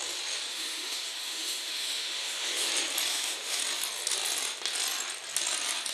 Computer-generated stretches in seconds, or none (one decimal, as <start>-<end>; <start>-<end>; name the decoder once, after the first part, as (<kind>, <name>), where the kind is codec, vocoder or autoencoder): 0.5-2.7 (autoencoder, DAC-VAE); 3.1-3.6